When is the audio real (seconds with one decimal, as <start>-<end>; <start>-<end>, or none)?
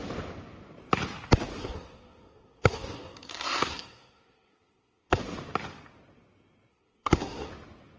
0.0-1.6; 5.2-6.7; 7.5-8.0